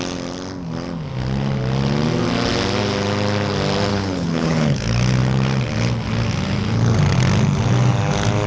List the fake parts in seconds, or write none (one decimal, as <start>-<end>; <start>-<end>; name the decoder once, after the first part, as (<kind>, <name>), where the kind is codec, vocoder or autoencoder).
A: 3.9-4.8 (codec, HILCodec)